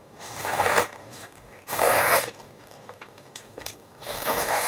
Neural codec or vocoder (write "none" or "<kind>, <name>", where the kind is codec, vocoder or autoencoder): codec, DAC